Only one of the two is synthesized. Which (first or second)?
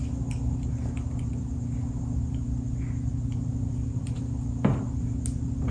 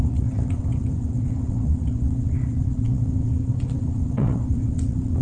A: second